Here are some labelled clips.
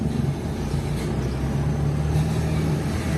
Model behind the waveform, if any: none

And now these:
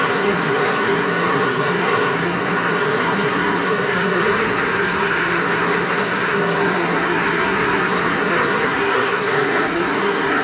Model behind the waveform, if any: codec, SNAC